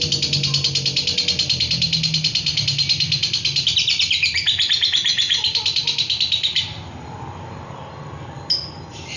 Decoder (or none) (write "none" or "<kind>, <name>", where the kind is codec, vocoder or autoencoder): none